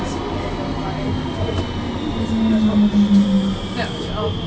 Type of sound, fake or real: real